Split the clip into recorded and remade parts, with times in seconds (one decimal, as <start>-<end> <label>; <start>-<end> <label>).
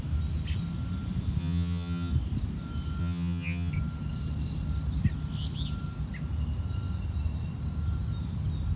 0.0-1.4 recorded; 1.4-2.1 remade; 2.1-3.0 recorded; 3.0-3.7 remade; 3.7-8.8 recorded